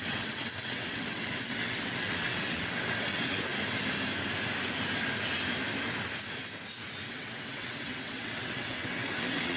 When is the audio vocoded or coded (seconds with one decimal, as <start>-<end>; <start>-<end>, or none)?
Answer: 0.0-3.5; 7.1-9.6